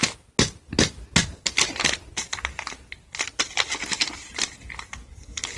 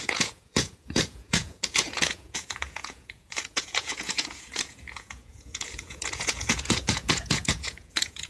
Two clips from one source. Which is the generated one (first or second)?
second